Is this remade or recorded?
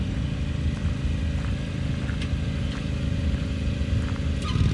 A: recorded